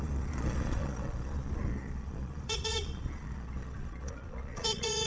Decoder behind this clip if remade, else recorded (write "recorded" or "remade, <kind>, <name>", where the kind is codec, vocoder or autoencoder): remade, vocoder, Vocos